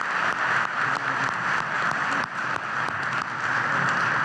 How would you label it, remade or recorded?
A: recorded